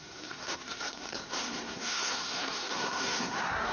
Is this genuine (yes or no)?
no